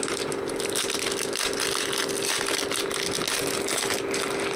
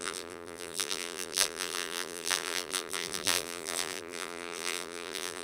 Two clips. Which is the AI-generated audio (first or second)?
second